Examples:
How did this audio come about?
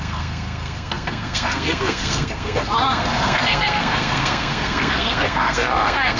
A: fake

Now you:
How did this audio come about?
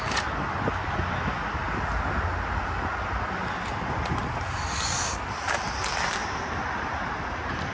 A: real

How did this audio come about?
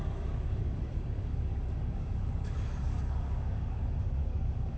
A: fake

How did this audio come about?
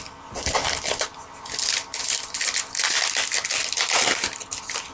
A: real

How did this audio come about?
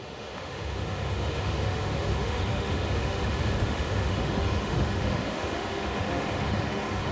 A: fake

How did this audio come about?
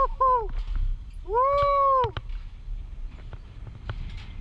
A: real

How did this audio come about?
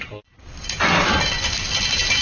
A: real